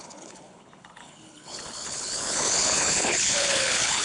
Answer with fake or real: fake